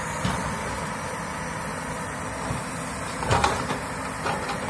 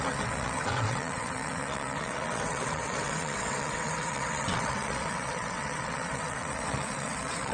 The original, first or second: first